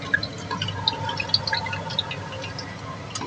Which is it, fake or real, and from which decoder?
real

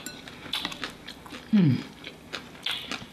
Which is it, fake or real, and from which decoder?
real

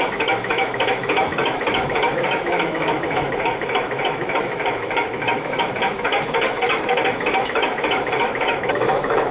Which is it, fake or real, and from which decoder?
fake, autoencoder, DAC-VAE